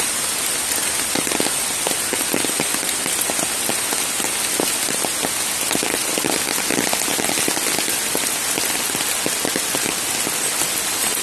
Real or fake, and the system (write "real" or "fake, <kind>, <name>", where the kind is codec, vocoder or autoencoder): real